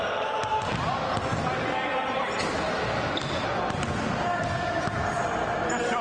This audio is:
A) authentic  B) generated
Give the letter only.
A